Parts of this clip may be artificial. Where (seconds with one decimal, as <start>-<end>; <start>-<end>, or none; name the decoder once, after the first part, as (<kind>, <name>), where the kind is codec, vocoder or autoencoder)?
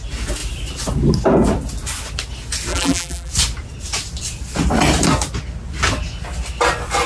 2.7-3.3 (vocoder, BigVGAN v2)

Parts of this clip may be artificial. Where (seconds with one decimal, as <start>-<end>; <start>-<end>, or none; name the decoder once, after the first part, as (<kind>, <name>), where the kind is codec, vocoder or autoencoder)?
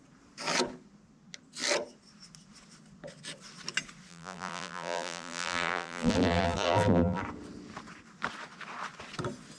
4.1-7.2 (vocoder, BigVGAN v2)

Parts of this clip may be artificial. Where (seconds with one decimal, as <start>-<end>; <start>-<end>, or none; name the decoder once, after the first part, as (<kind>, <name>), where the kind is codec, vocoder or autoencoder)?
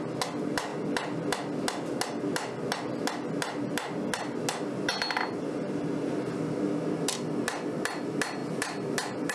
none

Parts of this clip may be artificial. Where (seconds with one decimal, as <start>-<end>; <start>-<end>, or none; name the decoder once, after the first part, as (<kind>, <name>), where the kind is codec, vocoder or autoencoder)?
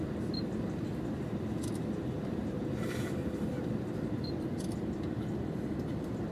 2.4-3.5 (vocoder, BigVGAN v2)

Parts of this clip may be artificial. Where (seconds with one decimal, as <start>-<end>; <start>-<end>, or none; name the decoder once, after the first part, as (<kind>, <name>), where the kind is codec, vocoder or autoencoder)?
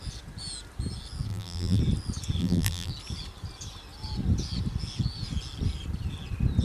1.3-1.8 (vocoder, BigVGAN v2); 2.4-2.9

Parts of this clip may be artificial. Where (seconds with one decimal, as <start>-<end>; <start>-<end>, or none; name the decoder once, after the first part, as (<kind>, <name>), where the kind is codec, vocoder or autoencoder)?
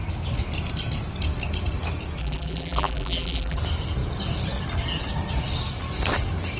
2.2-3.6 (vocoder, BigVGAN v2)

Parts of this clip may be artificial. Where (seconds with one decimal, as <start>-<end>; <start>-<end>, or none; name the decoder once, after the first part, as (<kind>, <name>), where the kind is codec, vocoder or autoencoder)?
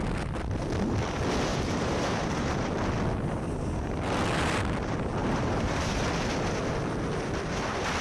1.5-2.8 (vocoder, BigVGAN v2); 5.2-5.9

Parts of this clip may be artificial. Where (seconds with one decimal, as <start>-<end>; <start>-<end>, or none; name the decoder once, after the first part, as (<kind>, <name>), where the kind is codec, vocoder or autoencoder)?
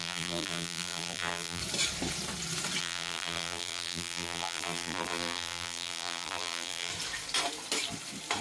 0.0-1.6 (vocoder, BigVGAN v2); 2.8-6.9